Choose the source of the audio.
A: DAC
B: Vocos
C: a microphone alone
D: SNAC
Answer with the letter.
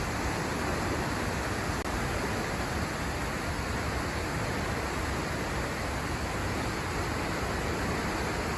C